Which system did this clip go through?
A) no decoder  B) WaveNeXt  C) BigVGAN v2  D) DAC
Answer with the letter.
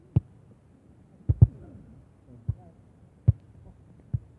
A